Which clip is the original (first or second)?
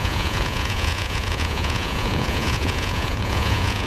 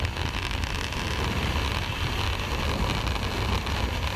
second